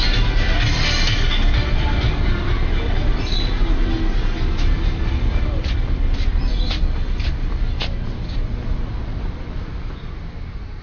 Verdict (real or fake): real